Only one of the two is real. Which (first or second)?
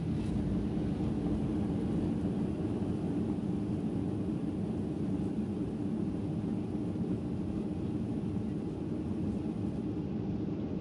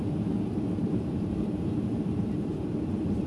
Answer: first